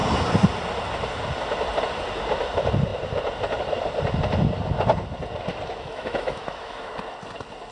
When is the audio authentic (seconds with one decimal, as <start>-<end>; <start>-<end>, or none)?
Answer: 0.0-5.9; 6.9-7.7